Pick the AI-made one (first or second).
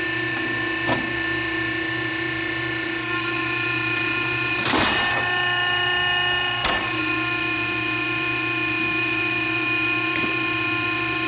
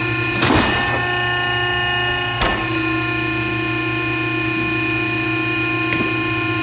first